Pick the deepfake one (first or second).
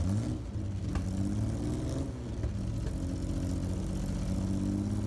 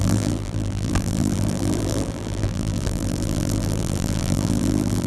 second